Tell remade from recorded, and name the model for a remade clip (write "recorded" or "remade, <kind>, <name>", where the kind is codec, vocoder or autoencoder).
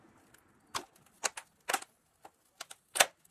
recorded